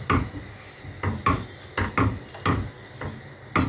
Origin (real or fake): real